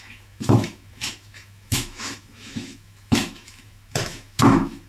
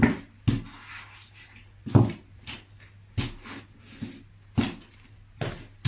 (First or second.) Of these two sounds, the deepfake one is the first